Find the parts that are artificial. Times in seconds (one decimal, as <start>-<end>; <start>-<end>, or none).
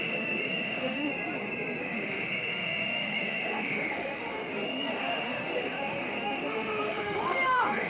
0.0-1.1; 1.8-7.9